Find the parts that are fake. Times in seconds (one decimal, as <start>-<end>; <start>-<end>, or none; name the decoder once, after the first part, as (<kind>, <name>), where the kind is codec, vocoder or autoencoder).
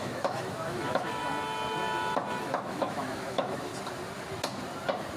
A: 0.0-1.2 (autoencoder, DAC-VAE); 2.4-3.7